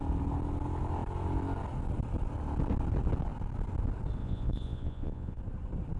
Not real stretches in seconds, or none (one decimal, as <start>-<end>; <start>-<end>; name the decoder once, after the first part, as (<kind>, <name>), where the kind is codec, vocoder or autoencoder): 4.2-5.4 (vocoder, Vocos)